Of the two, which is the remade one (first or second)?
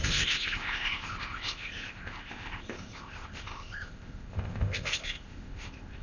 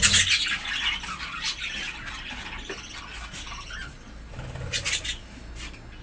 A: first